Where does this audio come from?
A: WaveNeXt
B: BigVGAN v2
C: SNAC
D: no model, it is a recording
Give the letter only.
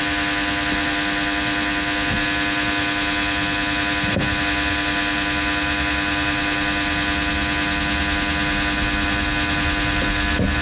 D